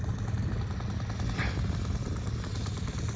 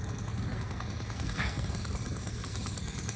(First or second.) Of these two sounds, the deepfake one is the second